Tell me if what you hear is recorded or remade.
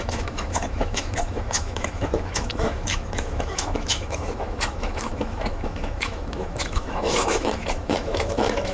remade